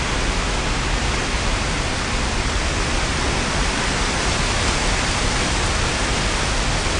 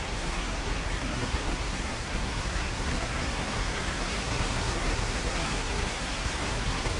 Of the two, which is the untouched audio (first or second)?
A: first